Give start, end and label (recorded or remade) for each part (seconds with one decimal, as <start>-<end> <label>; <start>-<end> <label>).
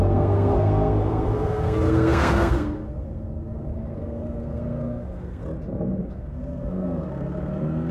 0.0-5.4 remade; 5.4-6.0 recorded; 6.0-7.9 remade